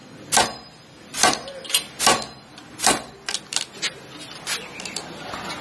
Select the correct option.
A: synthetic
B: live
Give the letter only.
B